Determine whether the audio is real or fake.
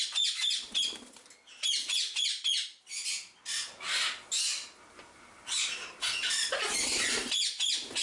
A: real